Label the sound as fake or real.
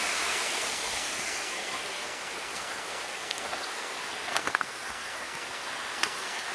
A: fake